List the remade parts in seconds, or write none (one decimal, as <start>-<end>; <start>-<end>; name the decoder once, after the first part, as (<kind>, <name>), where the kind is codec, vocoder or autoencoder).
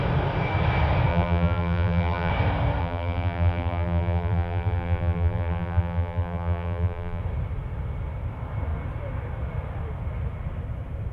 1.1-2.3 (vocoder, BigVGAN v2); 2.8-7.2